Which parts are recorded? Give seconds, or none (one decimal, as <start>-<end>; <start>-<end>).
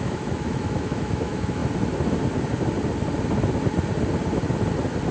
1.6-5.1